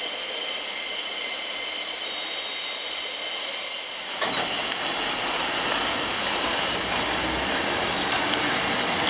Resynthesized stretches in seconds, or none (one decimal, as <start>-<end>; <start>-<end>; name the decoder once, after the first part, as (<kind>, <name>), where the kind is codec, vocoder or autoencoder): none

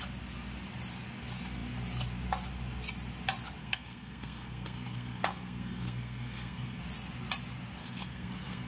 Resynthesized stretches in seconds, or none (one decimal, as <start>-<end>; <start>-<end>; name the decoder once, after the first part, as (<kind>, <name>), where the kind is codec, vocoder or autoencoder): 3.6-6.8 (codec, SNAC); 7.8-8.7

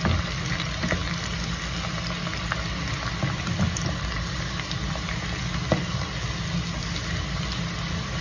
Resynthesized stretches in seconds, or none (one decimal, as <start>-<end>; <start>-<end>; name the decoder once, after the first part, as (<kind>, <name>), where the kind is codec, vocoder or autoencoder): none

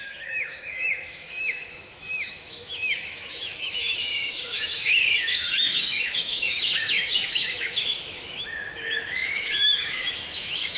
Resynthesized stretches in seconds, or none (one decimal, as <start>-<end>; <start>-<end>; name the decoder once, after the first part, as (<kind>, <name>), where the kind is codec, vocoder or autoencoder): 0.0-10.8 (autoencoder, DAC-VAE)

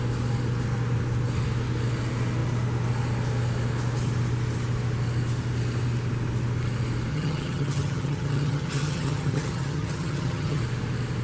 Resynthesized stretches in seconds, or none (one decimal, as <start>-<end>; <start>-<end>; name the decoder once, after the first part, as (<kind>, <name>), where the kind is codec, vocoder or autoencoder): 7.1-10.6 (vocoder, HiFi-GAN)